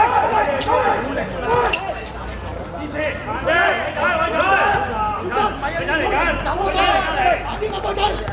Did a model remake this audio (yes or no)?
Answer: no